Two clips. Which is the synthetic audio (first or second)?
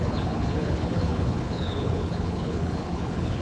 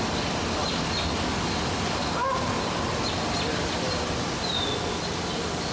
first